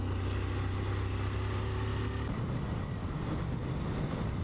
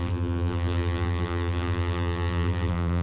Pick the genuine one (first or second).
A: first